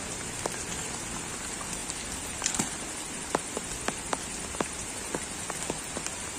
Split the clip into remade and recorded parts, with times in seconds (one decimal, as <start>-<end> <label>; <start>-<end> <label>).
0.0-1.8 remade; 1.8-5.6 recorded; 5.6-6.4 remade